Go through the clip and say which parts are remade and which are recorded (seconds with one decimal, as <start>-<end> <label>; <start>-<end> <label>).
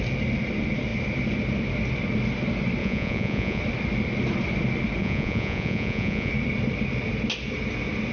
0.0-2.8 recorded; 2.8-3.6 remade; 3.6-5.0 recorded; 5.0-6.3 remade; 6.3-8.1 recorded